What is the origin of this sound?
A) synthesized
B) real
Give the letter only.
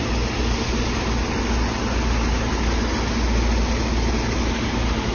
B